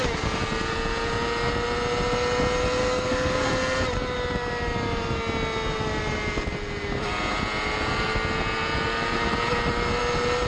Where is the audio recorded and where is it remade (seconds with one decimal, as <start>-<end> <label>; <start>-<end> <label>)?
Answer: 0.0-2.8 recorded; 2.8-3.5 remade; 3.5-10.5 recorded